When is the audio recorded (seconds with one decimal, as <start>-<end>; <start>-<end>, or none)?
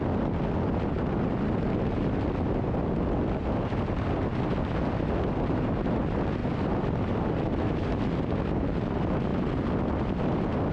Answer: 0.0-6.4; 8.0-10.7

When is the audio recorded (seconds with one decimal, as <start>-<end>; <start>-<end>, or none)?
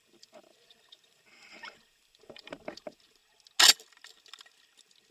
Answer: 3.2-5.1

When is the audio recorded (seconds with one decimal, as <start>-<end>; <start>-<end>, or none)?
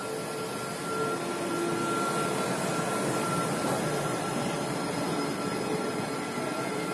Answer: 0.0-6.9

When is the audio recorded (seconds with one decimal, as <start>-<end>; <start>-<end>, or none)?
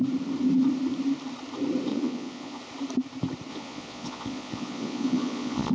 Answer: 0.0-1.9; 2.6-3.5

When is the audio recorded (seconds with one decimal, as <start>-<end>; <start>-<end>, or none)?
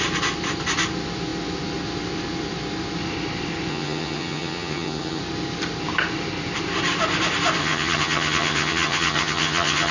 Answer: 0.0-3.7; 5.2-7.6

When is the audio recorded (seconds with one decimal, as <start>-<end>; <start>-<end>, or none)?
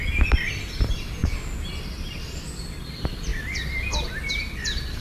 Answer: 0.0-5.0